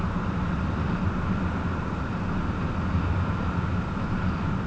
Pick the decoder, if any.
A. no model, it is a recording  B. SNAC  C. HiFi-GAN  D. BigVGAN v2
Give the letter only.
A